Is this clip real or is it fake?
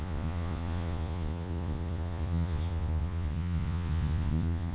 fake